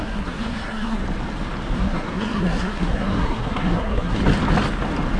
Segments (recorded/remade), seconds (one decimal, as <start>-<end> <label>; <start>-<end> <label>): 0.0-1.0 remade; 1.0-1.8 recorded; 1.8-4.2 remade; 4.2-5.2 recorded